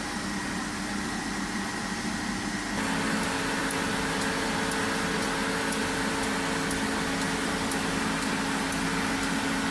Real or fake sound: real